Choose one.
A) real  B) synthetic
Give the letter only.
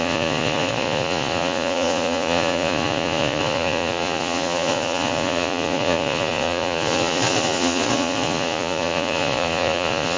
B